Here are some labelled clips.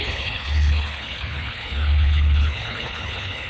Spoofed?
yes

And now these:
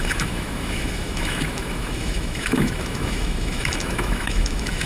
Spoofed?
yes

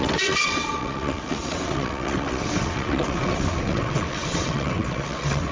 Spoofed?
yes